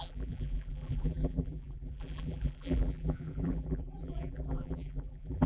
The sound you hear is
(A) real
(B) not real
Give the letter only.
B